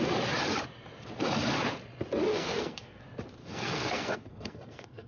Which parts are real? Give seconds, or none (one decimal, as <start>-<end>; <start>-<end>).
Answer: 0.0-2.3; 3.0-3.4